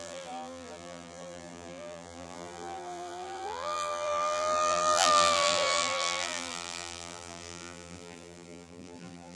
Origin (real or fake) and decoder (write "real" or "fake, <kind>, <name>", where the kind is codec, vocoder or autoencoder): fake, vocoder, BigVGAN v2